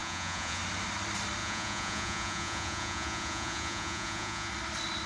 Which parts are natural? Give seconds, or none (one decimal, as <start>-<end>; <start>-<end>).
0.6-1.4; 4.5-5.1